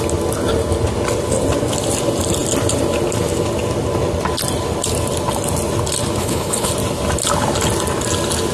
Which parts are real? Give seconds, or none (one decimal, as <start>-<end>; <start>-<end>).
0.0-6.2; 6.7-8.5

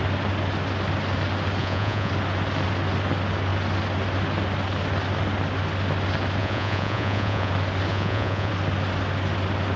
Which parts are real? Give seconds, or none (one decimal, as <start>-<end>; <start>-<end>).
0.0-1.6; 2.1-6.4; 7.5-7.9; 8.5-9.8

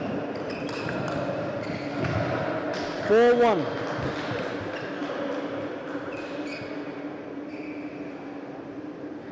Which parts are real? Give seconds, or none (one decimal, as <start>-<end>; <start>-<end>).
0.0-9.3

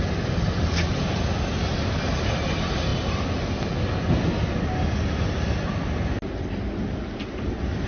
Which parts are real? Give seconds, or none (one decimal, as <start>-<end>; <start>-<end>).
0.0-7.9

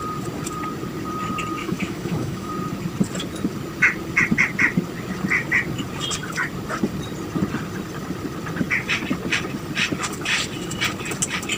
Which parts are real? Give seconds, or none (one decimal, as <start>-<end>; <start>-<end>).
0.0-1.6; 2.5-11.6

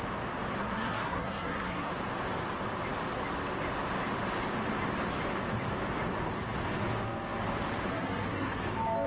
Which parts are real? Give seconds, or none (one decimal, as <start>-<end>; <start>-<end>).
0.0-0.6; 1.9-7.9; 8.6-9.1

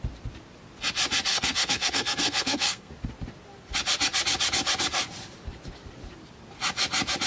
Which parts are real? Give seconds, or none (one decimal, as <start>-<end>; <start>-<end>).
0.0-1.3; 2.9-7.3

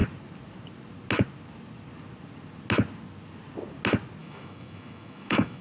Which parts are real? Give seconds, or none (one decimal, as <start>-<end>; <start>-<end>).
0.0-4.2